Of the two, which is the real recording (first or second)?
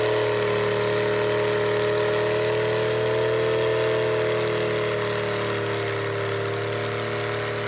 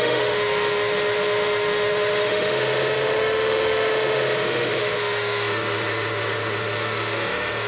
first